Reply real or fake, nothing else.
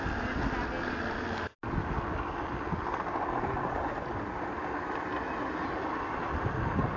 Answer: real